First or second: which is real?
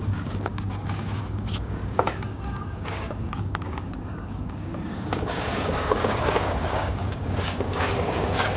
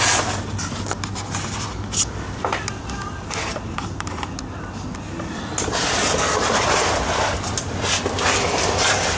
second